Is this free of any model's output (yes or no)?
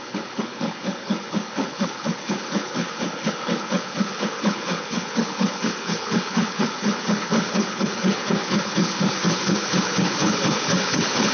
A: no